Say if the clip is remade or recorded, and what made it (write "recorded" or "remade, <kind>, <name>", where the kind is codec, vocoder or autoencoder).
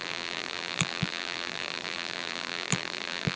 remade, vocoder, BigVGAN v2